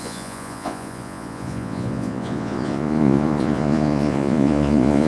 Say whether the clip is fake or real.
fake